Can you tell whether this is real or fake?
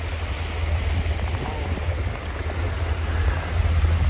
real